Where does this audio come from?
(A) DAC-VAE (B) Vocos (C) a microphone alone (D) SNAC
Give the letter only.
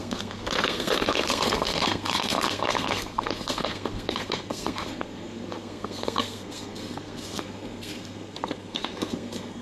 D